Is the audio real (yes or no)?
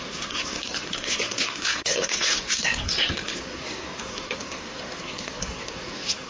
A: no